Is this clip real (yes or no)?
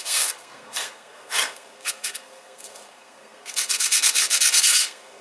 no